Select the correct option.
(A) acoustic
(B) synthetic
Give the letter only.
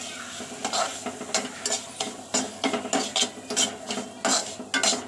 A